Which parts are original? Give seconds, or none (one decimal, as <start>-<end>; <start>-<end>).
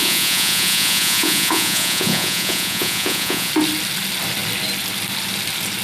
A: 3.5-5.8